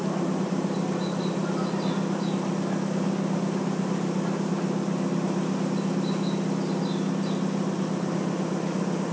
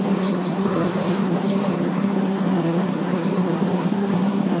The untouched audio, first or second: first